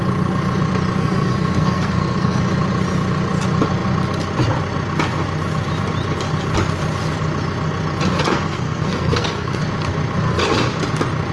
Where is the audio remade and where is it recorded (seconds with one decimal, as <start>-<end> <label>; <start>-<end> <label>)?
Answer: 0.0-1.0 recorded; 1.0-2.4 remade; 2.4-8.3 recorded; 8.3-9.6 remade; 9.6-11.3 recorded